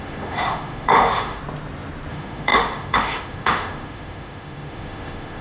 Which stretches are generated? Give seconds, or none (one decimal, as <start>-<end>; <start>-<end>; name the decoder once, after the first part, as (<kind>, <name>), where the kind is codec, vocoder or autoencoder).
0.0-1.4 (autoencoder, DAC-VAE); 2.1-5.4